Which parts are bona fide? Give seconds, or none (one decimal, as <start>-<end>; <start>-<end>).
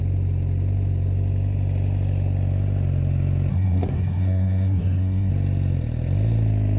0.0-3.5; 5.3-6.8